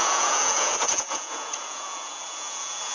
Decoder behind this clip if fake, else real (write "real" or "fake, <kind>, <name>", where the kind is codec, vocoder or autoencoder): fake, vocoder, Vocos